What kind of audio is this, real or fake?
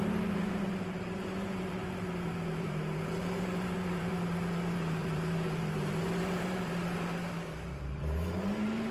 fake